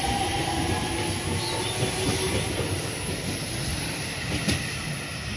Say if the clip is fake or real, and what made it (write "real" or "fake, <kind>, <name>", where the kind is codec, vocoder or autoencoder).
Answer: real